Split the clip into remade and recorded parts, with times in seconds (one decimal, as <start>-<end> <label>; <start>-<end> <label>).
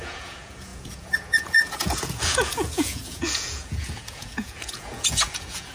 0.0-5.7 remade